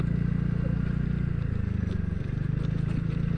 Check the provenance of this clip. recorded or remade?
recorded